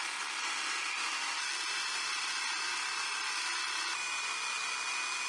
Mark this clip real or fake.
real